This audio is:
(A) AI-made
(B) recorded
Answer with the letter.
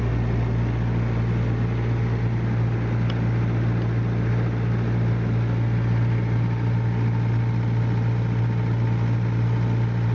B